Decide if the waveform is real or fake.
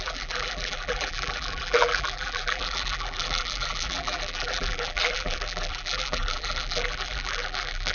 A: fake